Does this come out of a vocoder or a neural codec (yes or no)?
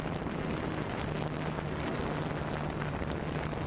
no